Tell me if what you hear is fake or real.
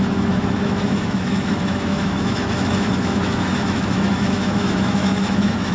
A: fake